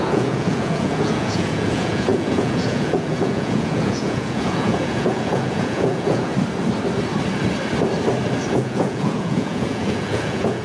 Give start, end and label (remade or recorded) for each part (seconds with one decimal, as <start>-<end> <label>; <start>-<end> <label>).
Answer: 0.0-6.3 remade; 6.3-8.5 recorded; 8.5-10.6 remade